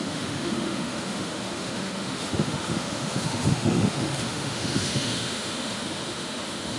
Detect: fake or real fake